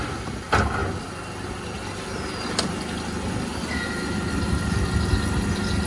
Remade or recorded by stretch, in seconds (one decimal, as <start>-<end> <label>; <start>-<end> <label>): 0.0-5.9 recorded

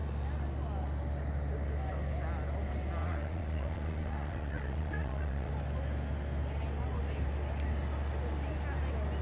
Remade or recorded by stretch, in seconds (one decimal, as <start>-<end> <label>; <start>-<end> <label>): 0.0-3.0 recorded; 3.0-5.5 remade; 5.5-9.2 recorded

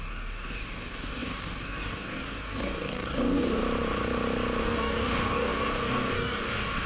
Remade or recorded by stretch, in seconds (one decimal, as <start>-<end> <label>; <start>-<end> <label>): 0.0-3.6 remade; 3.6-4.6 recorded; 4.6-6.9 remade

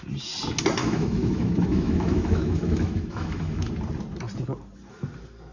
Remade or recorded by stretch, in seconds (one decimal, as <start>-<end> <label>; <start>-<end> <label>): 0.0-0.8 recorded; 0.8-3.7 remade; 3.7-5.5 recorded